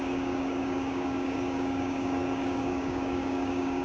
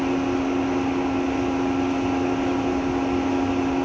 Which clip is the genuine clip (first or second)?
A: second